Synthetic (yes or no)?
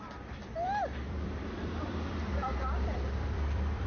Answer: yes